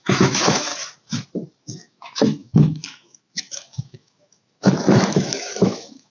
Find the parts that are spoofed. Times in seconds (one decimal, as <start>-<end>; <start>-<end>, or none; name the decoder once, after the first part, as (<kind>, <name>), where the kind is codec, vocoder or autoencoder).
0.0-0.7 (autoencoder, DAC-VAE); 1.6-6.1